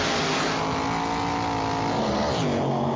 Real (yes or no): yes